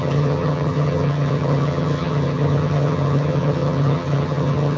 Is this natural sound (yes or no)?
no